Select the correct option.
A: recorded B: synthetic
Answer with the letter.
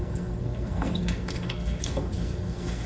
B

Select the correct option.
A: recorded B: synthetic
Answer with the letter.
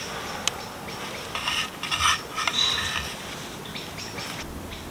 A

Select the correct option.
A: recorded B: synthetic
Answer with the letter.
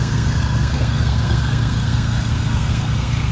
B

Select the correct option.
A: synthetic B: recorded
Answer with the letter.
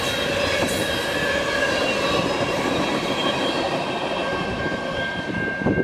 A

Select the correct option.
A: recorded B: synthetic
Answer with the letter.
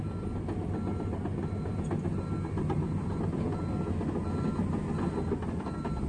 A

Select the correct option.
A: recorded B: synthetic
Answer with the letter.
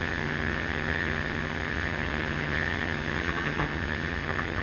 B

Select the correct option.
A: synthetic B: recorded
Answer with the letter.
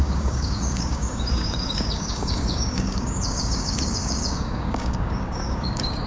A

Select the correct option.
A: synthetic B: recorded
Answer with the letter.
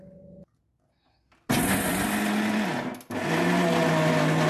B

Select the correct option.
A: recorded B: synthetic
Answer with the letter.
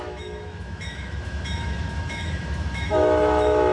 B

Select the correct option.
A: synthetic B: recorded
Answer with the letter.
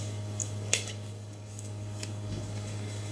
A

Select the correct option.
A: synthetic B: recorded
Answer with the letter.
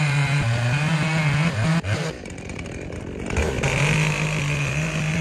B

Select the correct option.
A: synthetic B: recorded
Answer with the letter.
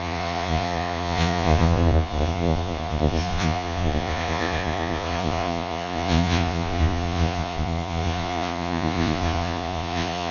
A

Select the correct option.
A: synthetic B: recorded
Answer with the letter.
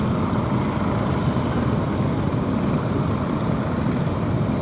B